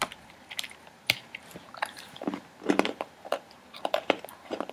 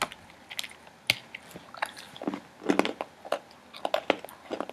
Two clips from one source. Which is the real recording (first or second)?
second